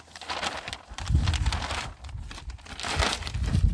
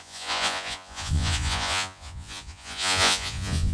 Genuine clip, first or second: first